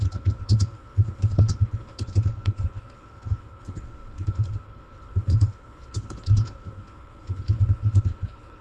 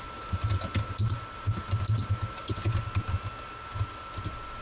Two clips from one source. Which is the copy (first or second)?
first